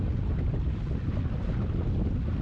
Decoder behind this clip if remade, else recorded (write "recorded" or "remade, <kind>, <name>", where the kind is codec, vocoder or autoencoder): recorded